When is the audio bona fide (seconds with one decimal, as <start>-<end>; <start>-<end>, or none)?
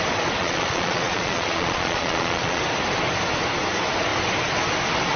0.0-0.4; 2.6-5.2